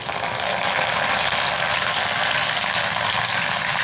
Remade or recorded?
recorded